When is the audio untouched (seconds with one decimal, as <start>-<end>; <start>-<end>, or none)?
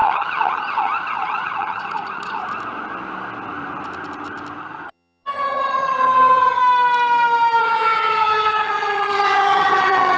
2.4-4.6; 6.6-7.6